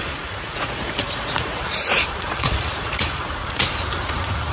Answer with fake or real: fake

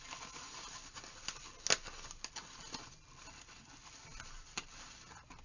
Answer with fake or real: real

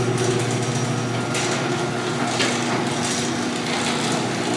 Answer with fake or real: real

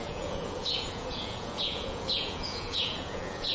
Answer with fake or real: fake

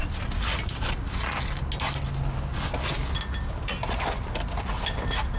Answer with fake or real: real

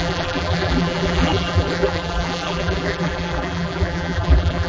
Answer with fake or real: fake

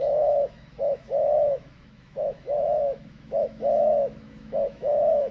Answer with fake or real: fake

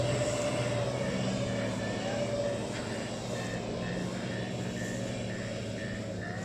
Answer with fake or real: real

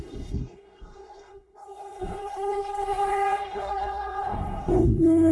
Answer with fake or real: fake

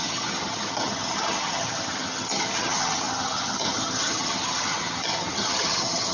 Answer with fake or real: fake